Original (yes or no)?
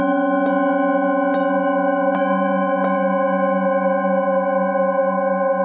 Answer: yes